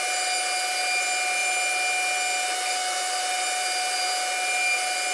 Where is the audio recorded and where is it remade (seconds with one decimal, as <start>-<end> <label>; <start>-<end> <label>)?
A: 0.0-5.1 recorded